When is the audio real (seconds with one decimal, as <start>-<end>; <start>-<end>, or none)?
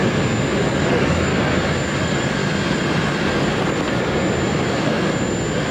0.0-0.8; 1.3-2.0; 2.4-5.7